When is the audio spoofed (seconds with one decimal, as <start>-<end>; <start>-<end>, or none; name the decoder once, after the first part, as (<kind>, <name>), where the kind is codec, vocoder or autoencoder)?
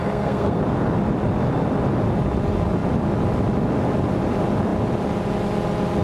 0.0-0.6 (codec, SNAC)